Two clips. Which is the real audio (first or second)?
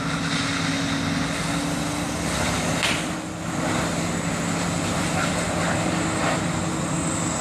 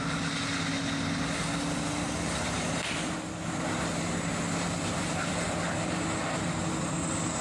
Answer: first